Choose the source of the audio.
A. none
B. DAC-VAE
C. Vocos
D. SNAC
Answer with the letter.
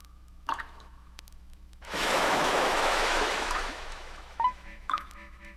B